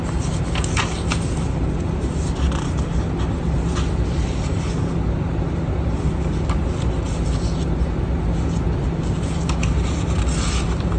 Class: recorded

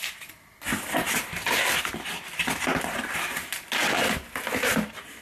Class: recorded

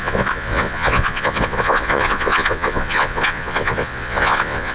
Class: remade